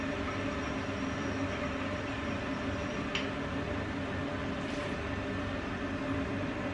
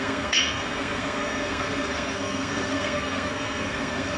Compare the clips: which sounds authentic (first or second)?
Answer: first